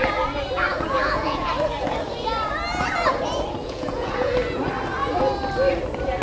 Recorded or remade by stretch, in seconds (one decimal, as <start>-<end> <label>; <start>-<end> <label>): 0.0-0.7 recorded; 0.7-1.5 remade; 1.5-3.6 recorded; 3.6-4.3 remade; 4.3-6.2 recorded